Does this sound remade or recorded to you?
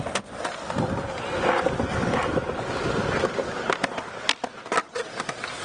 recorded